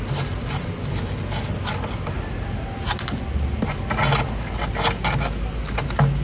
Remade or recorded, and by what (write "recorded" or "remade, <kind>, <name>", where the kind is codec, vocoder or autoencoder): recorded